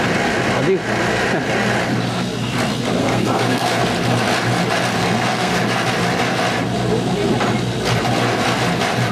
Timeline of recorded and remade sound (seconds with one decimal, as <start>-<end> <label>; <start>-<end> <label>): 0.0-3.0 recorded; 3.0-3.8 remade; 3.8-5.0 recorded; 5.0-5.5 remade; 5.5-9.1 recorded